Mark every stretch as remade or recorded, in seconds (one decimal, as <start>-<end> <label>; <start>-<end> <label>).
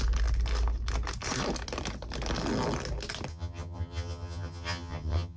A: 0.0-3.3 recorded; 3.3-5.4 remade